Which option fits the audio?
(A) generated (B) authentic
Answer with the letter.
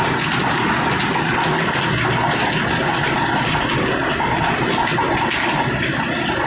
B